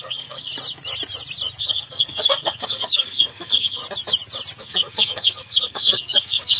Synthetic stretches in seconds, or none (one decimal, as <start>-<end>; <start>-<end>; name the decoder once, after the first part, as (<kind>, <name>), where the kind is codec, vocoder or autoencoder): 0.0-0.5 (codec, SNAC); 1.6-3.8; 4.6-6.6